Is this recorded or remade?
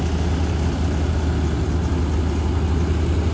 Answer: recorded